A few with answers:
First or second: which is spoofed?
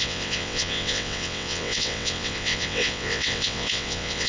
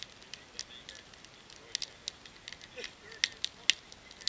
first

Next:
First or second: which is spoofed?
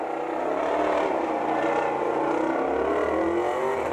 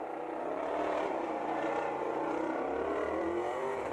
second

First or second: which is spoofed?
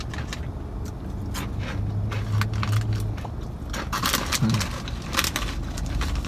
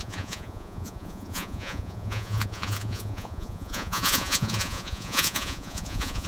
second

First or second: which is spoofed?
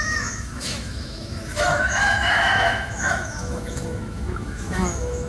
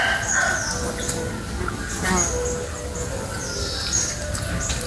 first